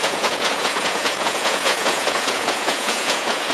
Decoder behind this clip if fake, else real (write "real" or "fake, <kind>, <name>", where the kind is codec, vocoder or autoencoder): fake, vocoder, Vocos